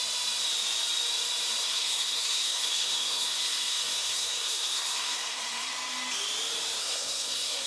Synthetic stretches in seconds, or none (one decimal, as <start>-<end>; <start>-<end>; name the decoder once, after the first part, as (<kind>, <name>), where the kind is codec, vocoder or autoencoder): 1.6-5.7 (codec, SNAC); 6.8-7.7